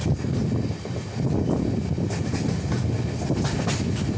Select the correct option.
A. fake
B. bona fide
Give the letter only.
B